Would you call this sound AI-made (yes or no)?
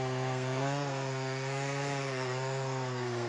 yes